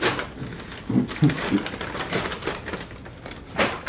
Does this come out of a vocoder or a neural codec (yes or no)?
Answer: no